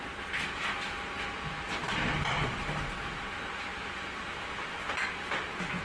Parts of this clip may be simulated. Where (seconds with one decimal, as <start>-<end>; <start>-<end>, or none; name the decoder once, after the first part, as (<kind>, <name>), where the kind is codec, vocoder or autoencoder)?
none